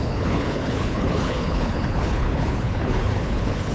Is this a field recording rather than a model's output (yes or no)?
no